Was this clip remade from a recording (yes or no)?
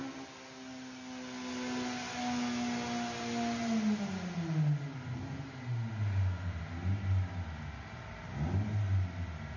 no